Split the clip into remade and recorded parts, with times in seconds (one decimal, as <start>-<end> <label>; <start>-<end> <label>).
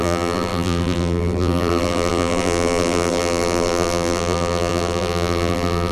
0.0-5.9 remade